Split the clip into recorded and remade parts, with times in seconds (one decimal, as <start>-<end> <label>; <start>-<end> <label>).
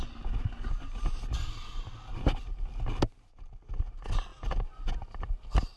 0.0-5.8 recorded